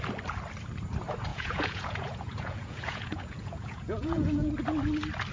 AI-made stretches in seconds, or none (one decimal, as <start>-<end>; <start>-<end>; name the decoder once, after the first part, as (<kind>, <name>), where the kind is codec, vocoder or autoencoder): 1.3-4.5 (vocoder, Vocos)